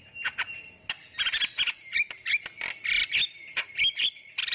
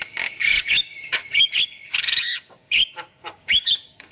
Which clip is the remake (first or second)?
second